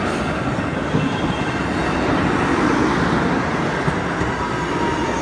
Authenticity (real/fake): real